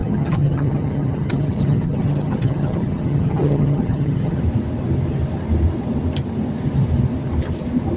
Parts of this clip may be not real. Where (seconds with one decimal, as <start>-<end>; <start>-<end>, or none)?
0.0-4.4